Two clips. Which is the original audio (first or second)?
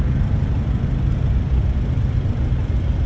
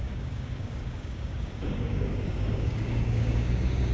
first